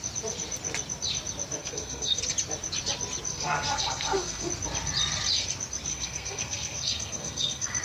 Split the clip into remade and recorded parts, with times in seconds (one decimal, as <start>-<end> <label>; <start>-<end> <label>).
0.0-1.6 recorded; 1.6-2.2 remade; 2.2-3.3 recorded; 3.3-4.5 remade; 4.5-5.9 recorded; 5.9-7.8 remade